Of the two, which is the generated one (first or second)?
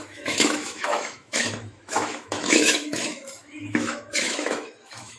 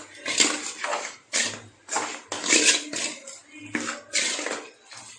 first